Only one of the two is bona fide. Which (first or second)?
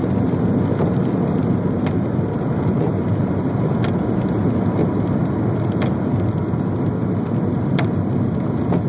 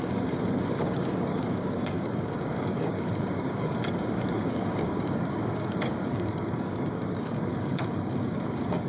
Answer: first